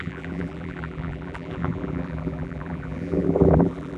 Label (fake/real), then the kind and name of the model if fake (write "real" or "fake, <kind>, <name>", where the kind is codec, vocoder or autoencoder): fake, vocoder, BigVGAN v2